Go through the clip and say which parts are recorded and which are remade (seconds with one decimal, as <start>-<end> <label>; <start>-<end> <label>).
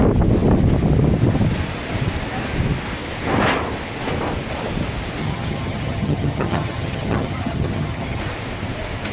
0.0-5.2 recorded; 5.2-8.2 remade; 8.2-9.1 recorded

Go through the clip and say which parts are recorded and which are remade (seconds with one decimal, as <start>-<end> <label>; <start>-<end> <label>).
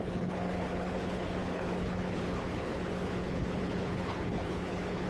0.0-5.1 remade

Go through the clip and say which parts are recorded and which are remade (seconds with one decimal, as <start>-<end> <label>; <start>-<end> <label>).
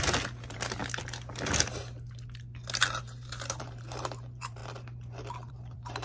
0.0-0.8 remade; 0.8-3.0 recorded; 3.0-4.6 remade; 4.6-5.5 recorded; 5.5-6.0 remade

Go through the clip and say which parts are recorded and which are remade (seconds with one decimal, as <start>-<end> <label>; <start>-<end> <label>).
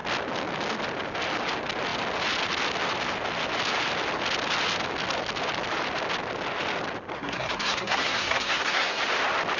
0.0-7.1 recorded; 7.1-9.0 remade; 9.0-9.6 recorded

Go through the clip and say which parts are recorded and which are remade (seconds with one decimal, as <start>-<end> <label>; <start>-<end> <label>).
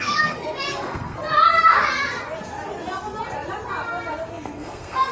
0.0-1.2 remade; 1.2-4.3 recorded; 4.3-5.1 remade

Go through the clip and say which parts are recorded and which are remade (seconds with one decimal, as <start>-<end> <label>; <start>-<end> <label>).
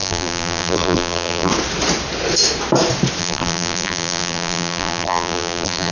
0.0-1.5 remade; 1.5-3.2 recorded; 3.2-5.9 remade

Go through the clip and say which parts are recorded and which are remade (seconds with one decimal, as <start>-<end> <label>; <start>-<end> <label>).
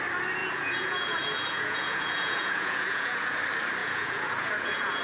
0.0-0.4 recorded; 0.4-3.4 remade; 3.4-3.8 recorded; 3.8-5.0 remade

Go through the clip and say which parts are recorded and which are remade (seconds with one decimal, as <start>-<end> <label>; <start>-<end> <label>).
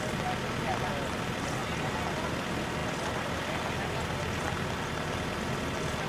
0.0-6.1 recorded